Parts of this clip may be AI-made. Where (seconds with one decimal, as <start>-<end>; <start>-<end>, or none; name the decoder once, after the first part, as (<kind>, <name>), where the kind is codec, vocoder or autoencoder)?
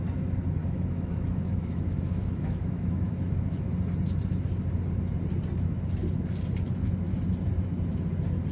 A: 0.6-3.7 (autoencoder, DAC-VAE)